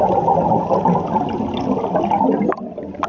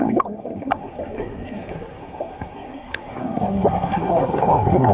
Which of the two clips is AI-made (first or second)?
second